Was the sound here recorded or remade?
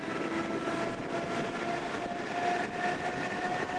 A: recorded